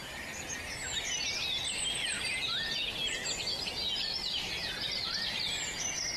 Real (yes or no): yes